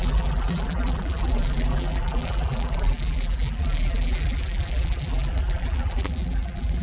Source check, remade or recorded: remade